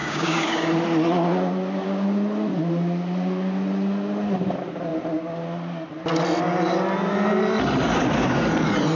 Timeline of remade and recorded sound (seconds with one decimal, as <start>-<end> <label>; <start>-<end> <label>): 0.0-0.7 remade; 0.7-9.0 recorded